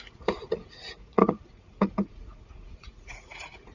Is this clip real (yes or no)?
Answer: no